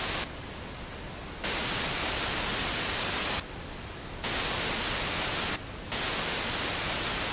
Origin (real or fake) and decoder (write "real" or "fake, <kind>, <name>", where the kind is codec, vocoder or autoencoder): real